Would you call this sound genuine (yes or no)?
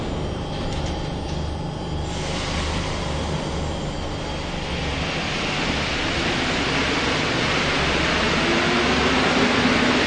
yes